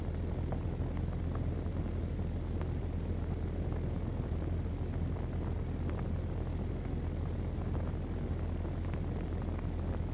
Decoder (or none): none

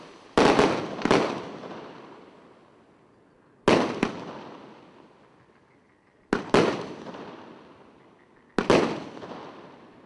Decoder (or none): none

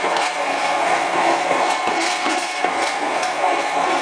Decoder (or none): codec, SNAC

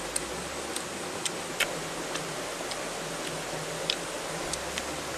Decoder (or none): none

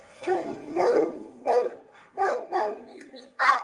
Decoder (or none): codec, SNAC